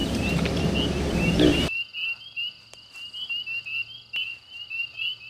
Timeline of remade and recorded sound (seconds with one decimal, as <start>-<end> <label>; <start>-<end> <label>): 0.0-5.3 recorded